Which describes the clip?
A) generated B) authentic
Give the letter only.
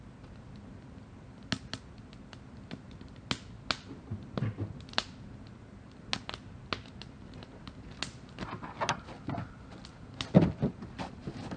B